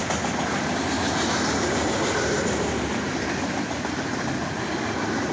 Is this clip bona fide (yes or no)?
yes